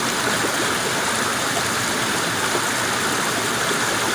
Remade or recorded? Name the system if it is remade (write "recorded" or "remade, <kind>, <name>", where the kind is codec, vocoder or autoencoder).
recorded